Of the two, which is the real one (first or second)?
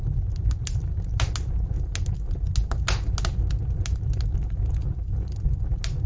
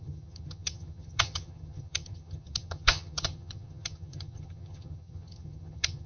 first